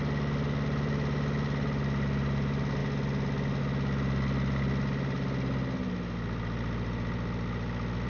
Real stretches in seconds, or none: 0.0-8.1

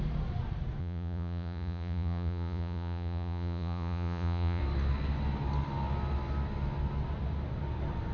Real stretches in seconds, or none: 0.0-0.8; 4.6-8.1

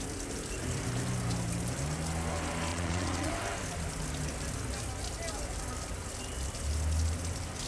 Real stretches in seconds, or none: 0.0-2.7; 3.3-7.7

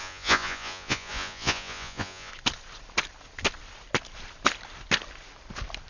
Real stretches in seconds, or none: 2.3-5.9